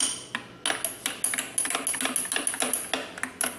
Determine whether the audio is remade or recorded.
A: recorded